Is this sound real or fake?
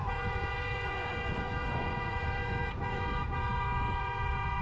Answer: fake